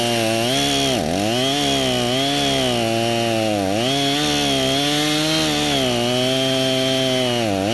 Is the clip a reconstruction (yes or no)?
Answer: no